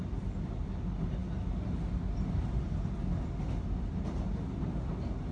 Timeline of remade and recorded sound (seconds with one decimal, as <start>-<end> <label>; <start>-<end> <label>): 0.0-5.3 recorded